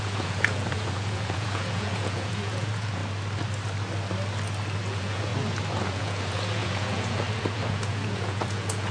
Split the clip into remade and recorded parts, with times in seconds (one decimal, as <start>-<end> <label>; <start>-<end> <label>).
0.0-3.0 remade; 3.0-4.8 recorded; 4.8-5.3 remade; 5.3-5.8 recorded; 5.8-8.9 remade

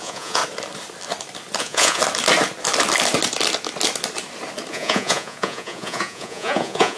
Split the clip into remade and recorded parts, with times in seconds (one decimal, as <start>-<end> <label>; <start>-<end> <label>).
0.0-0.4 remade; 0.4-1.6 recorded; 1.6-2.0 remade; 2.0-4.7 recorded; 4.7-7.0 remade